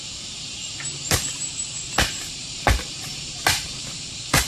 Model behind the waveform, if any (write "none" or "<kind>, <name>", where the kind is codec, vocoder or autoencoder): vocoder, BigVGAN v2